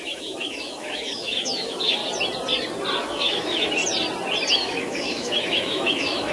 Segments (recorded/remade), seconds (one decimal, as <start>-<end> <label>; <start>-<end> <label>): 0.0-2.0 remade; 2.0-3.0 recorded; 3.0-3.8 remade; 3.8-4.5 recorded; 4.5-6.3 remade